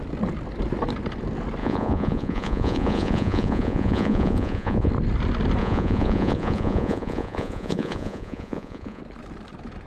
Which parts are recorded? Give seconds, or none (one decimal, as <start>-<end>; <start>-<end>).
0.0-1.6; 4.9-5.6; 9.0-9.9